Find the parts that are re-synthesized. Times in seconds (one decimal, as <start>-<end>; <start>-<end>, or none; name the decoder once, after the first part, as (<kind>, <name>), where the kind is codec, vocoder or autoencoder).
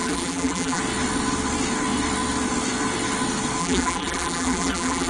0.0-0.8 (vocoder, BigVGAN v2); 3.6-5.1